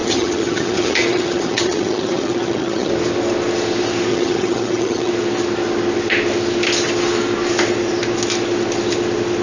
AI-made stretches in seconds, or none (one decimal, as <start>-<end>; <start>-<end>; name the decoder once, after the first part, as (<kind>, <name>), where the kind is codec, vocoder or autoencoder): 0.0-2.9 (vocoder, HiFi-GAN); 4.1-5.1